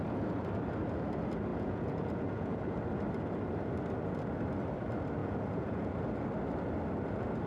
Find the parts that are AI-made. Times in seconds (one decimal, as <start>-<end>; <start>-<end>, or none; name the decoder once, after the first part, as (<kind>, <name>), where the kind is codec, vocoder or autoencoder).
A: 1.5-2.8 (vocoder, Vocos); 5.2-5.9